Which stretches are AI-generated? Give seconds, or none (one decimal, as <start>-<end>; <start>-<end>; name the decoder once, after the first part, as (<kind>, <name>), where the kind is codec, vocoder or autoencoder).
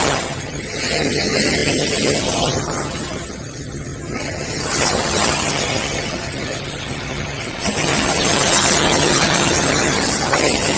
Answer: 0.0-10.8 (vocoder, HiFi-GAN)